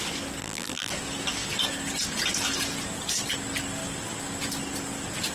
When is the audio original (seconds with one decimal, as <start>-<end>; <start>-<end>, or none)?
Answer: 0.0-0.4; 0.9-5.3